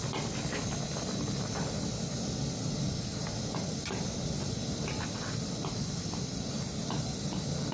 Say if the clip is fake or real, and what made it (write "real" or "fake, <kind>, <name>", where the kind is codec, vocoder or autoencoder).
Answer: real